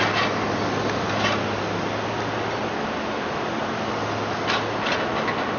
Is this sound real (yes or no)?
yes